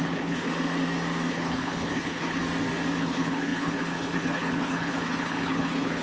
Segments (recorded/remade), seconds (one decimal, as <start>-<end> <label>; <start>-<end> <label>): 0.0-0.5 remade; 0.5-1.3 recorded; 1.3-2.4 remade; 2.4-3.0 recorded; 3.0-6.0 remade